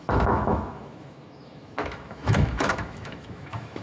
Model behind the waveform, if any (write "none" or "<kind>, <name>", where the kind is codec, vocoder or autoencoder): autoencoder, DAC-VAE